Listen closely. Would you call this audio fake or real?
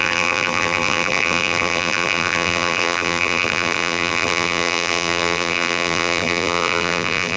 fake